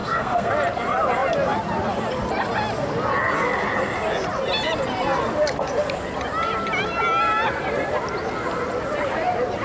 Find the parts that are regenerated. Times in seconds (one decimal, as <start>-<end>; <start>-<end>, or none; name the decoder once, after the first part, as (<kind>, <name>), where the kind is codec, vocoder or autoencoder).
0.0-0.5 (codec, SNAC)